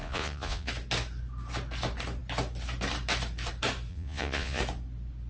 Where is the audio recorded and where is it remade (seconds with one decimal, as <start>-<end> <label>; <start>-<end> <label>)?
0.0-0.7 remade; 0.7-3.9 recorded; 3.9-4.6 remade; 4.6-5.3 recorded